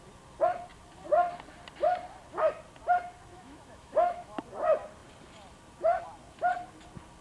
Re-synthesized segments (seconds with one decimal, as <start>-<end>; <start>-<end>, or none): 3.3-4.4